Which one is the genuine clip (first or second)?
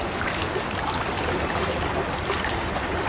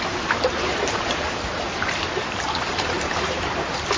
first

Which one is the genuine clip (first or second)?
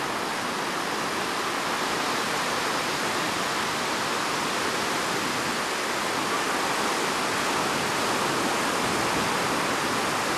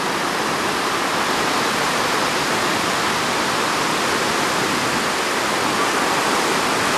first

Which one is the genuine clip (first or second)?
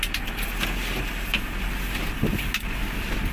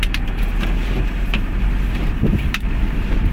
first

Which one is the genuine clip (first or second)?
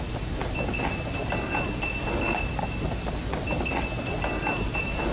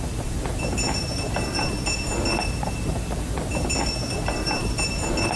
first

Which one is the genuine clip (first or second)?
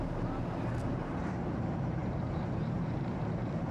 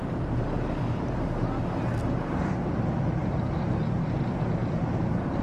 second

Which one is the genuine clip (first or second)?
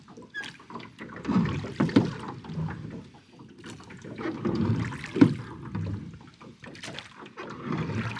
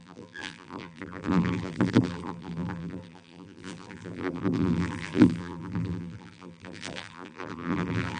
first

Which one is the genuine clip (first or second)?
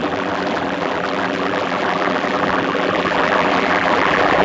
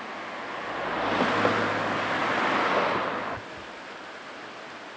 second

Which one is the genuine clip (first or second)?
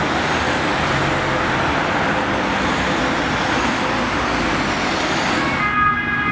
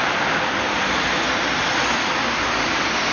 first